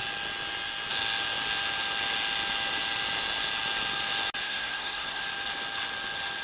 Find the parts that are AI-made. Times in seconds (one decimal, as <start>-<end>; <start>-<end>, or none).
4.4-5.2